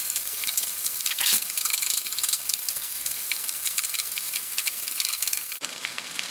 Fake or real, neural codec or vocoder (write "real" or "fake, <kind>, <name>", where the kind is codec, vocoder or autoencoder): fake, codec, SNAC